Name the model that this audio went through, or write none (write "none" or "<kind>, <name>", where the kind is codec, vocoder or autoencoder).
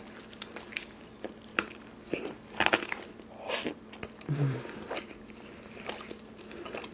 vocoder, BigVGAN v2